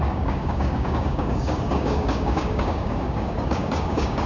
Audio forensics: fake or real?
fake